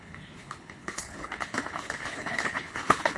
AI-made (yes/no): yes